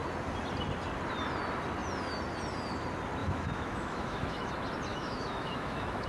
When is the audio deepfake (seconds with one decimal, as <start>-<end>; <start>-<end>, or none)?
3.2-4.5; 4.9-6.1